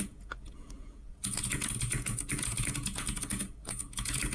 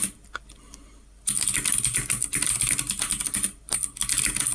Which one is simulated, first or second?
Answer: first